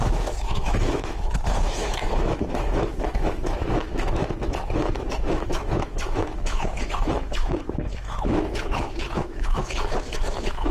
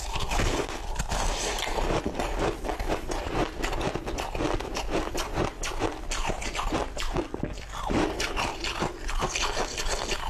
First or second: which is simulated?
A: first